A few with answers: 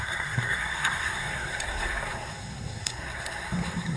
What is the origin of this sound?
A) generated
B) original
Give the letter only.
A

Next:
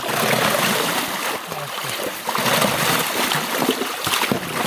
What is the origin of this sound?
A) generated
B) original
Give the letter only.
B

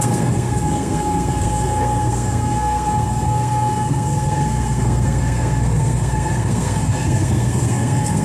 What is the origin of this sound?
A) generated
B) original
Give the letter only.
A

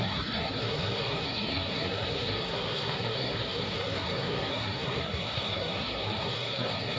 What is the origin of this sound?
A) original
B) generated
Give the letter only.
B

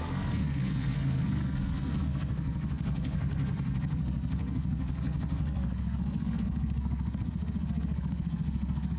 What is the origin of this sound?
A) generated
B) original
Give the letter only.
A